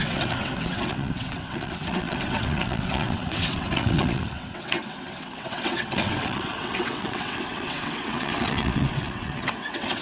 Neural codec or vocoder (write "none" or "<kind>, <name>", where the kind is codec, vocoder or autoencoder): vocoder, WaveNeXt